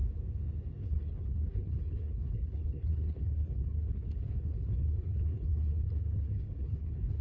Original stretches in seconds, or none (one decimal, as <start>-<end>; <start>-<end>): 0.0-0.8